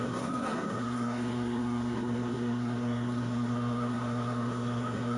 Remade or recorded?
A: remade